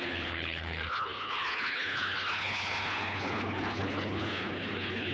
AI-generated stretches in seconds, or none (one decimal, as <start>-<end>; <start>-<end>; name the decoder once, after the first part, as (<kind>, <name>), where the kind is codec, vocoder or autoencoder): 0.0-5.1 (codec, HILCodec)